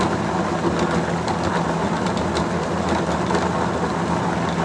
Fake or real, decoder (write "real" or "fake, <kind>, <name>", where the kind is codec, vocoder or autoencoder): real